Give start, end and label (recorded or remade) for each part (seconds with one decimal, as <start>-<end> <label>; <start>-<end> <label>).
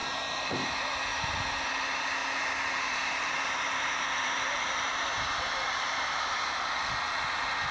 0.0-0.7 remade; 0.7-1.1 recorded; 1.1-1.7 remade; 1.7-2.2 recorded; 2.2-6.6 remade; 6.6-7.7 recorded